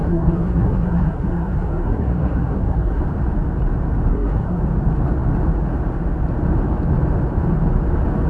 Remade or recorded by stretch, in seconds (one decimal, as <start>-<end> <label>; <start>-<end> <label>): 0.0-3.0 remade; 3.0-4.1 recorded; 4.1-4.6 remade; 4.6-8.3 recorded